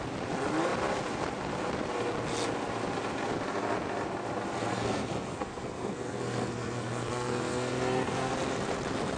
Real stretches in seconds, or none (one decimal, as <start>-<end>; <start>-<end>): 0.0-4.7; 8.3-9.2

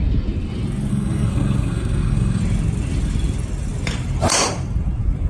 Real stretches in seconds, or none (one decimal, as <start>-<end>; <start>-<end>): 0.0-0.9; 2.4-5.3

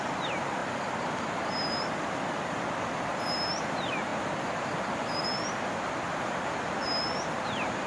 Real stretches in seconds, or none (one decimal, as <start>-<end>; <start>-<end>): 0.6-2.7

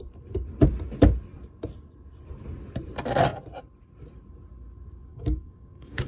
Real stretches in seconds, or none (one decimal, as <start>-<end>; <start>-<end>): 0.0-5.1

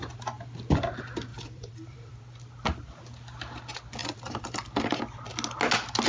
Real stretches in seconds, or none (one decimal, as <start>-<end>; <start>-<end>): 0.0-1.3; 2.2-4.0; 5.0-6.1